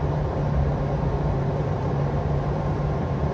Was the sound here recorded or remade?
remade